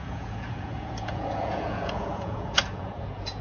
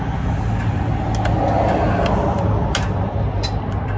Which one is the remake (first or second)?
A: first